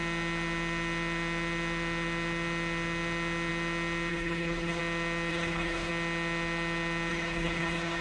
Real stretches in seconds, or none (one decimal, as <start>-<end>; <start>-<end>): 0.0-4.1; 4.8-5.3; 5.9-7.1